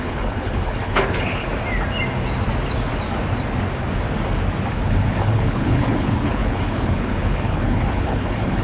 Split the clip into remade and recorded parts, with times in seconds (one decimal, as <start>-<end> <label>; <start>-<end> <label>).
0.0-1.5 remade; 1.5-4.7 recorded; 4.7-8.6 remade